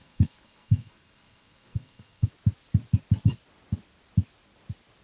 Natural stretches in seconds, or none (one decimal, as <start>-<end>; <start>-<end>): 2.3-5.0